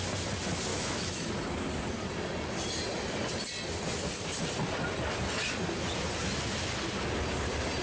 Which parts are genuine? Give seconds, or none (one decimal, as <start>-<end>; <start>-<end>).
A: 0.0-0.7; 1.3-7.8